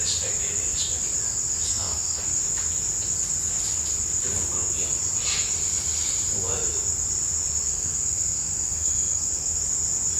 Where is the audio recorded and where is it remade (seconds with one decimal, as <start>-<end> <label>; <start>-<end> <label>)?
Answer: 0.0-1.7 recorded; 1.7-2.4 remade; 2.4-7.7 recorded; 7.7-9.6 remade; 9.6-10.2 recorded